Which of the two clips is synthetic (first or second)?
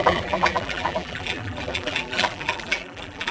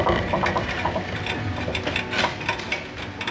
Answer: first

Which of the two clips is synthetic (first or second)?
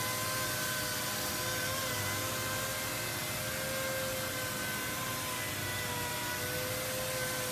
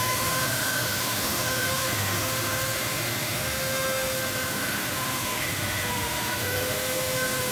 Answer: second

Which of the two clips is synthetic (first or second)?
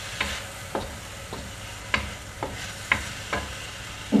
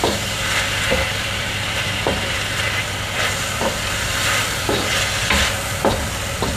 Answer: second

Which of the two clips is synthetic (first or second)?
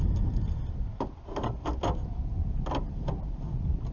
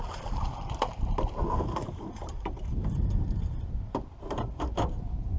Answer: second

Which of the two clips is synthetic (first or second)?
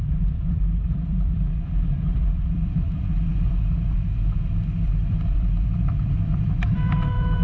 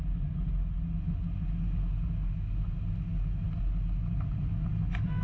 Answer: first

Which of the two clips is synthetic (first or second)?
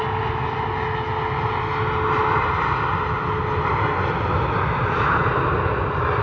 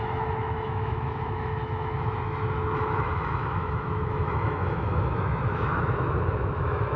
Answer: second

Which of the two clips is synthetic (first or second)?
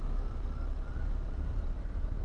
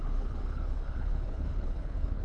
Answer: second